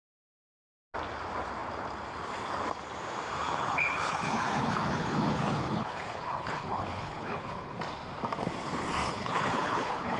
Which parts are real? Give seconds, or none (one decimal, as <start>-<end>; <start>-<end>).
0.0-3.4; 7.8-9.1